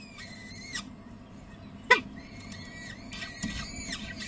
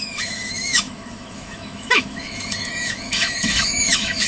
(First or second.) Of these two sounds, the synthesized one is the second